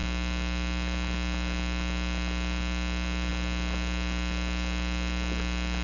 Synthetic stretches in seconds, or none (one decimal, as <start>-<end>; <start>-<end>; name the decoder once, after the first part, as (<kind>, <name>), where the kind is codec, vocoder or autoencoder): none